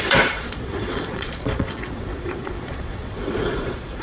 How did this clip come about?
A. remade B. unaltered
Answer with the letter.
A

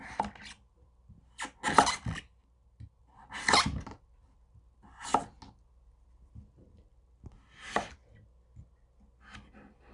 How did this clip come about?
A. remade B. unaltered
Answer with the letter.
B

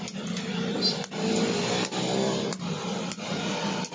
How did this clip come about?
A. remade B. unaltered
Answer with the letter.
B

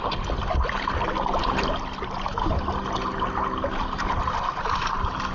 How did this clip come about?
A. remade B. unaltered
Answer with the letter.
B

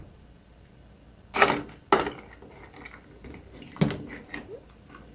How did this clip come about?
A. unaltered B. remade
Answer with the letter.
A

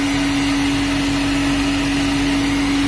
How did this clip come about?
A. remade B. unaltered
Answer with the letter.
B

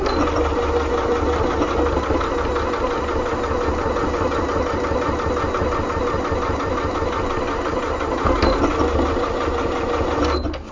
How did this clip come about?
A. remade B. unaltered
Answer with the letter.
B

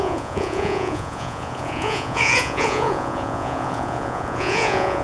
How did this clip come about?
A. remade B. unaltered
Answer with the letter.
A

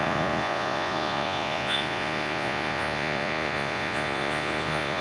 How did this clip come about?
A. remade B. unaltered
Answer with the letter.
A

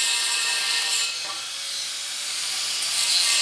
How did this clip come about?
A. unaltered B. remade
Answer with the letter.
A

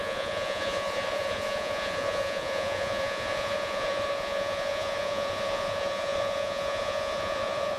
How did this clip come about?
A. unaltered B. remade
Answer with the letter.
B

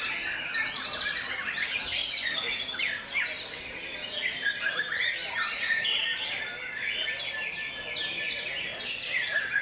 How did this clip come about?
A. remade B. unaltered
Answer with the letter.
B